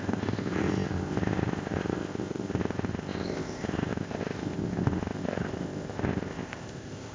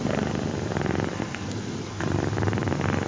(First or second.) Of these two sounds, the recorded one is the second